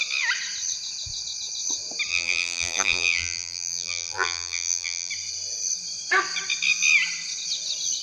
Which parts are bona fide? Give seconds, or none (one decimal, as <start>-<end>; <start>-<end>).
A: 0.0-2.1; 5.1-8.0